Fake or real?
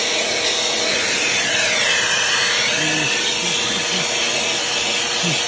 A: real